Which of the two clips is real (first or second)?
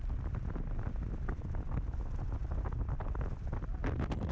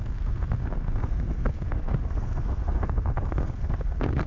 first